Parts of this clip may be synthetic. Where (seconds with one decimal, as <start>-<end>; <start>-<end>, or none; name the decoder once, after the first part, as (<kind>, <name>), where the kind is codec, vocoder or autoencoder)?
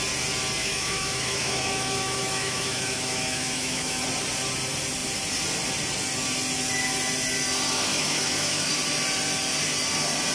0.6-4.0 (autoencoder, DAC-VAE); 7.9-8.7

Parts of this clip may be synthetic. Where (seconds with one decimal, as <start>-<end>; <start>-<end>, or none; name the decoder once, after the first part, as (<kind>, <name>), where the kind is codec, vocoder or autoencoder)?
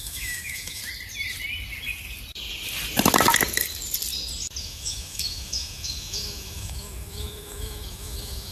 0.0-0.8 (autoencoder, DAC-VAE); 4.6-8.5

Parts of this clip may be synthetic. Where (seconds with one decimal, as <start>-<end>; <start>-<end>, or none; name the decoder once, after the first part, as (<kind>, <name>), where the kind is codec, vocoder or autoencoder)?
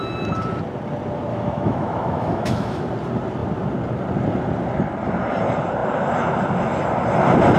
1.3-2.8 (autoencoder, DAC-VAE)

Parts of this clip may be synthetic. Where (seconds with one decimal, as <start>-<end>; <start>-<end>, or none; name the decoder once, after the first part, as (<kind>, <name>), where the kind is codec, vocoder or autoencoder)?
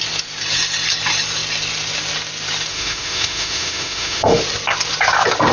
2.7-4.4 (autoencoder, DAC-VAE)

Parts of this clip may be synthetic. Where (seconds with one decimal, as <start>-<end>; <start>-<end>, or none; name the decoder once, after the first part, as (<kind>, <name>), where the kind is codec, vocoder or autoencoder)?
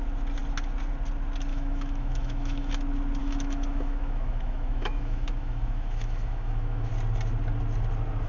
1.5-2.7 (autoencoder, DAC-VAE); 3.2-6.9